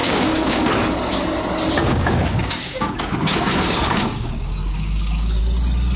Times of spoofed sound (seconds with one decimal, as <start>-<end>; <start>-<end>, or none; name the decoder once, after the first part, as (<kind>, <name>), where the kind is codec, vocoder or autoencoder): 0.0-0.6 (codec, DAC); 1.8-5.4